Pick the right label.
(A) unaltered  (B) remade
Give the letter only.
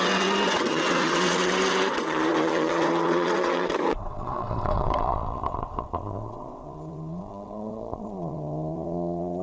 B